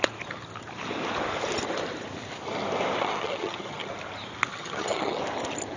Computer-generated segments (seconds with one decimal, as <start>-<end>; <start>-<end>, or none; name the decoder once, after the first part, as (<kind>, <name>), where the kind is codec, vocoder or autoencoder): 3.0-3.9 (vocoder, HiFi-GAN); 4.5-5.2